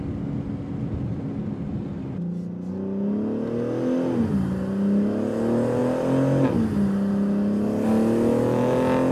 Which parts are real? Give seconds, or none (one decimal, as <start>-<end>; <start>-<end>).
0.0-9.1